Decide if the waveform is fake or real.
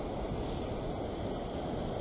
real